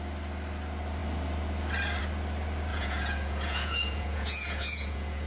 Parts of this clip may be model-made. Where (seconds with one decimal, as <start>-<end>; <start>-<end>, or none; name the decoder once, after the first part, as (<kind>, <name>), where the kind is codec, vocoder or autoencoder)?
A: 2.7-5.3 (vocoder, Vocos)